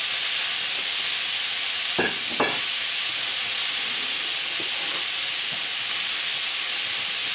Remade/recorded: recorded